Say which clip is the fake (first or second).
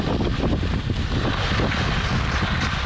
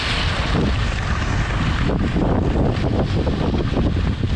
second